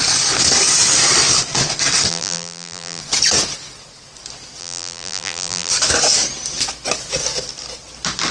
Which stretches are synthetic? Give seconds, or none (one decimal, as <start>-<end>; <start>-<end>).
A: 2.1-3.0; 4.6-5.7